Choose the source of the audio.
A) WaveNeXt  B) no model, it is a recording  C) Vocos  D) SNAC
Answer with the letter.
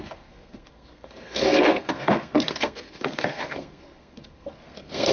D